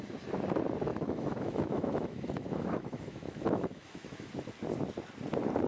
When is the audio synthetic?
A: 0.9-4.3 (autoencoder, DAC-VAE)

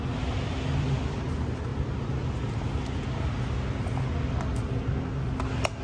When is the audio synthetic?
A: none

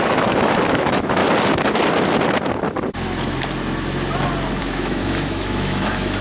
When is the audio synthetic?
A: 0.0-1.2 (autoencoder, DAC-VAE); 4.6-6.2

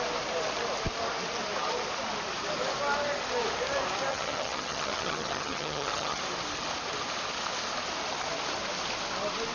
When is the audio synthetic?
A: 4.1-6.2 (vocoder, HiFi-GAN)

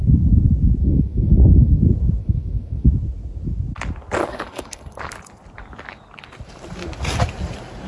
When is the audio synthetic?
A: 0.8-1.8 (codec, SNAC); 2.2-2.9; 4.2-5.0

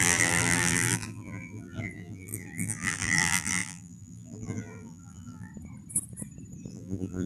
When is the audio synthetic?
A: 0.0-5.5 (vocoder, BigVGAN v2); 6.7-7.3